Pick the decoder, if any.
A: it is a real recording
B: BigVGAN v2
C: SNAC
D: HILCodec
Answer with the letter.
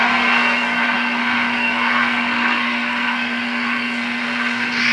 C